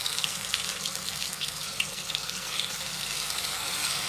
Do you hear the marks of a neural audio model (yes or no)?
yes